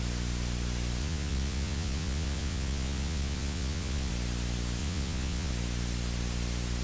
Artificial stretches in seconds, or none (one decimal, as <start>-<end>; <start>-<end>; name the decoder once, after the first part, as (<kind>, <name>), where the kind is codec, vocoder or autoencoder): 1.0-4.1 (vocoder, Vocos); 4.8-5.5